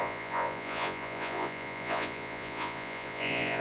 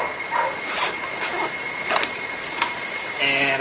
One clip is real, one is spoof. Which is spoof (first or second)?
first